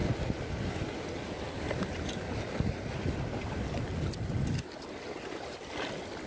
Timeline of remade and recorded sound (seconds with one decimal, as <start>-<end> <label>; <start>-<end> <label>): 0.0-6.3 recorded